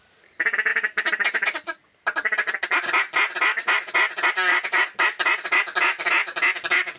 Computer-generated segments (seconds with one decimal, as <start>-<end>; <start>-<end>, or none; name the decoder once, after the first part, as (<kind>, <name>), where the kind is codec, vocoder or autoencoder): 0.0-0.7 (vocoder, BigVGAN v2); 4.3-6.2